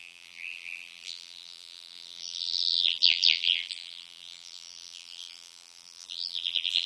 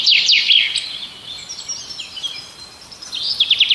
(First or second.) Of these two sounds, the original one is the second